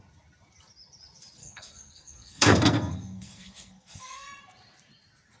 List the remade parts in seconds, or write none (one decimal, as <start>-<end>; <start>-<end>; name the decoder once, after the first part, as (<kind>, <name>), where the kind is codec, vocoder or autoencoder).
1.4-4.4 (codec, SNAC)